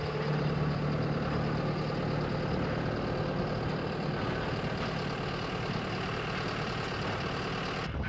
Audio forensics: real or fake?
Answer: real